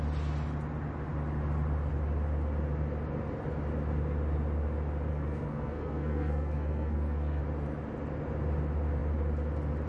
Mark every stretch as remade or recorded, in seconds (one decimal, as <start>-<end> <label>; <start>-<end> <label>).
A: 0.0-5.1 recorded; 5.1-7.4 remade; 7.4-9.9 recorded